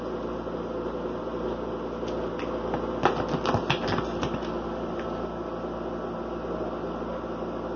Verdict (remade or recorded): recorded